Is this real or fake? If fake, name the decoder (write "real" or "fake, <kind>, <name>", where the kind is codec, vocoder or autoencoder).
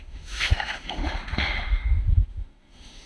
fake, autoencoder, DAC-VAE